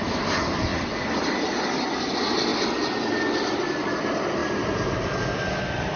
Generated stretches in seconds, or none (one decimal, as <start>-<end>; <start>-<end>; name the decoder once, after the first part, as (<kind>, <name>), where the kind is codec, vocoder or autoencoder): 0.0-0.7 (vocoder, BigVGAN v2); 2.0-2.5; 3.8-6.0